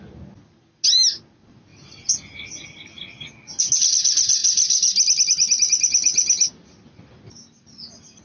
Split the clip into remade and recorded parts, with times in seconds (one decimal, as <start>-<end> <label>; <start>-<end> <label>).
0.0-8.2 recorded